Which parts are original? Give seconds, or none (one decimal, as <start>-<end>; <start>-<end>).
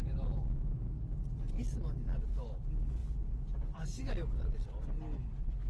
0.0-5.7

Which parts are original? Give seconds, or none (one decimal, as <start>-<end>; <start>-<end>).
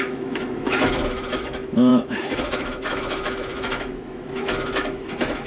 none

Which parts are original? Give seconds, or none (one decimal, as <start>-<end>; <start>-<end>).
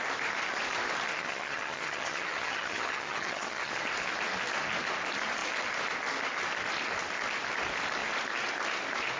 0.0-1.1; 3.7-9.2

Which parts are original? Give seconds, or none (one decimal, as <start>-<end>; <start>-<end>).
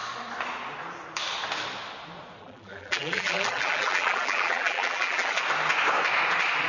0.0-2.4; 5.4-6.7